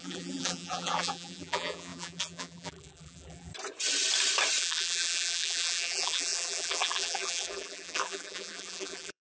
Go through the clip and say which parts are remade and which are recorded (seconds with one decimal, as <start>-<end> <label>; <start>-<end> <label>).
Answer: 0.0-3.5 remade; 3.5-4.6 recorded; 4.6-9.2 remade